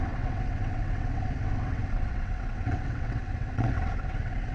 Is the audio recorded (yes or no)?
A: no